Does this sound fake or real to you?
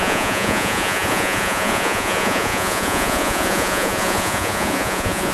fake